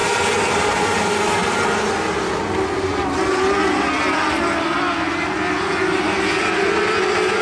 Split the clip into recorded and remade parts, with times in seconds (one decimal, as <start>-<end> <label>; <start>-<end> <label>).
0.0-7.4 recorded